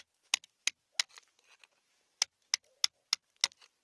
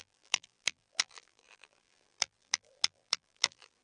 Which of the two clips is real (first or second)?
first